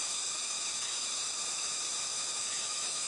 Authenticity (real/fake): fake